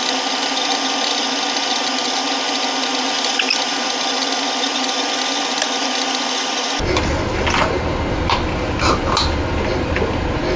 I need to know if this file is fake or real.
real